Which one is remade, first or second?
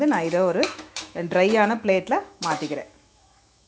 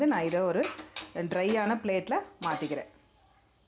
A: first